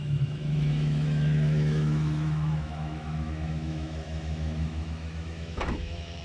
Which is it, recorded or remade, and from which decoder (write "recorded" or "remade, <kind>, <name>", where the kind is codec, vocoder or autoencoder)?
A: remade, autoencoder, DAC-VAE